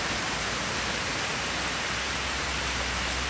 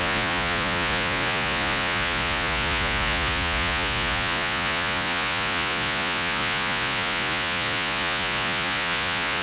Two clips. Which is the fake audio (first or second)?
second